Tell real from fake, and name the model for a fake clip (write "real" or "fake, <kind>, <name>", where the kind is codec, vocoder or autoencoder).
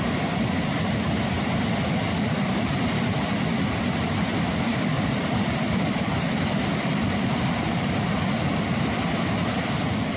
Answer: real